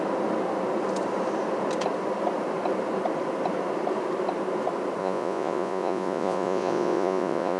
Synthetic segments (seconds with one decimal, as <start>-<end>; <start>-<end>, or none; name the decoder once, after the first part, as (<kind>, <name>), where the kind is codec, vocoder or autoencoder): 5.0-7.6 (vocoder, Vocos)